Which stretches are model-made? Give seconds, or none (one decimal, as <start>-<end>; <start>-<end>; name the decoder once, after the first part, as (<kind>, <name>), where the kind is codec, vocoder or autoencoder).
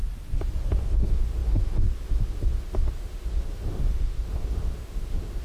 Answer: 0.8-5.4 (autoencoder, DAC-VAE)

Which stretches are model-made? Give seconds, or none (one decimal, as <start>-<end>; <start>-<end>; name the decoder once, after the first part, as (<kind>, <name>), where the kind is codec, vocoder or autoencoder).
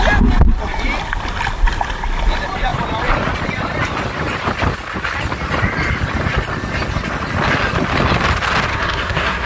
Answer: 8.7-9.5 (codec, SNAC)